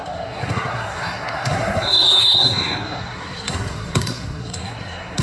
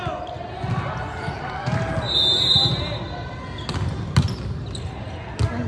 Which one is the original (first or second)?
second